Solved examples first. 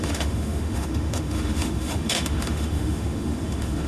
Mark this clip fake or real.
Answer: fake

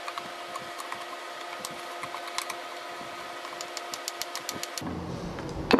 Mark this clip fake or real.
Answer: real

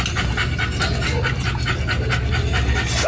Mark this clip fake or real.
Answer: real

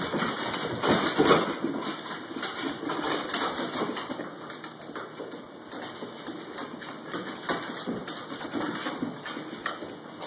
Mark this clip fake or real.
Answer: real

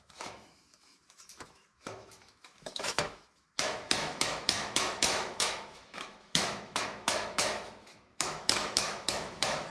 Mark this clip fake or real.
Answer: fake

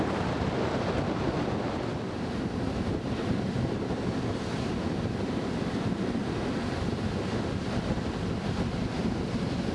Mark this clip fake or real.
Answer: real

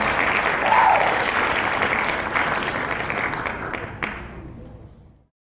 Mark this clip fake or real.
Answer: real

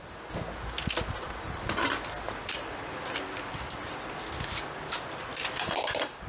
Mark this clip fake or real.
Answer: real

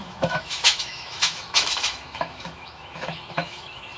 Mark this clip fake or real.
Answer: fake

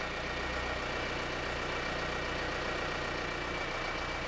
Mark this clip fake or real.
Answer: real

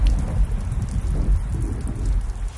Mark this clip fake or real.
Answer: real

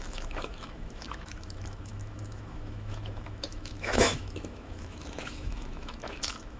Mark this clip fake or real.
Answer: fake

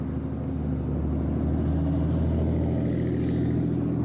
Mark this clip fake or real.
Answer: real